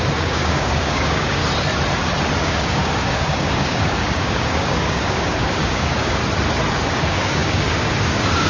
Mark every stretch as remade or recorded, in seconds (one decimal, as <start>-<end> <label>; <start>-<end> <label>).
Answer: 0.0-1.4 remade; 1.4-2.4 recorded; 2.4-6.2 remade; 6.2-6.7 recorded; 6.7-8.5 remade